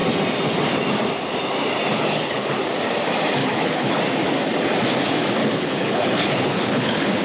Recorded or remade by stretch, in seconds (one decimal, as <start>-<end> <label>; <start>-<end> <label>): 0.0-1.9 recorded; 1.9-2.6 remade; 2.6-3.4 recorded; 3.4-4.0 remade; 4.0-5.4 recorded; 5.4-7.2 remade